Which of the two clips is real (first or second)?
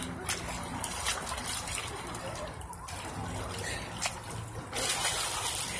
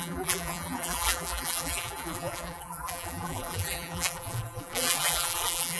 first